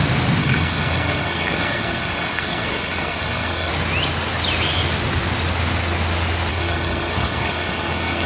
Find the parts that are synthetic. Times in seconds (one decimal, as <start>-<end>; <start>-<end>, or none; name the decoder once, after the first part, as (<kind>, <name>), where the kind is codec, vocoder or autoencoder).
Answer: 0.4-3.7 (codec, SNAC); 6.5-8.3